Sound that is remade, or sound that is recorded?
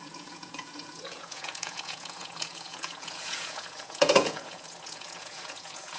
remade